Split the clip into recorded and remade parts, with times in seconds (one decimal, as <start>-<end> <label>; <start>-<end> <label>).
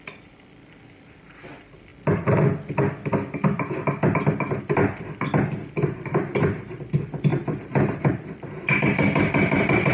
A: 0.0-1.9 remade; 1.9-4.6 recorded; 4.6-7.3 remade; 7.3-7.9 recorded; 7.9-9.9 remade